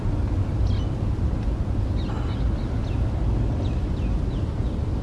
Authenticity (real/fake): real